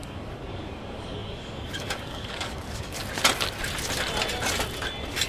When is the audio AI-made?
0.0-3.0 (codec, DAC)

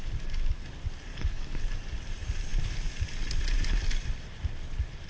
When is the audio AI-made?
1.1-1.6 (codec, DAC)

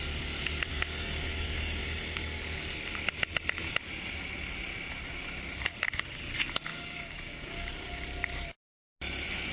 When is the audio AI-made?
0.7-1.8 (codec, DAC); 6.7-8.0

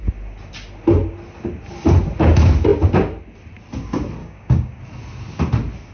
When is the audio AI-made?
4.2-4.8 (codec, DAC)

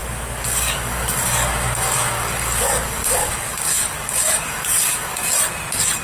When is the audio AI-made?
0.0-5.2 (codec, DAC)

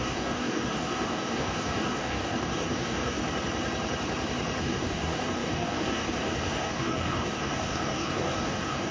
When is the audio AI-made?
0.0-3.2 (codec, DAC); 4.6-8.9